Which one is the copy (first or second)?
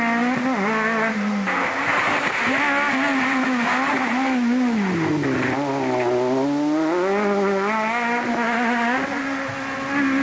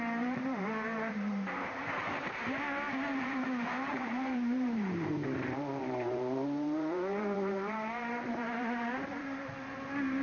second